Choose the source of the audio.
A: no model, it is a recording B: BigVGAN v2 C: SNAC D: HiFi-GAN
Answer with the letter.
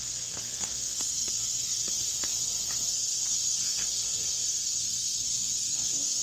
C